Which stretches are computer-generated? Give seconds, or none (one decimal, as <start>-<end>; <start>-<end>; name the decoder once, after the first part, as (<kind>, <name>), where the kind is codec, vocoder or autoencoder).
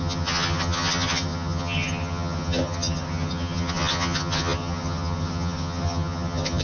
0.0-6.6 (vocoder, HiFi-GAN)